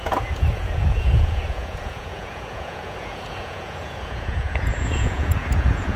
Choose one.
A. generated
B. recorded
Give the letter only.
A